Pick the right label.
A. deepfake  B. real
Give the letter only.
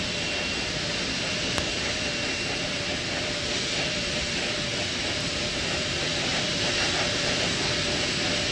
B